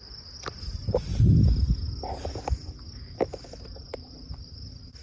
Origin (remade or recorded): recorded